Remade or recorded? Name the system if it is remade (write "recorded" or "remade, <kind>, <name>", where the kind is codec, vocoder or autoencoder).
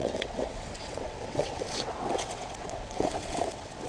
remade, vocoder, WaveNeXt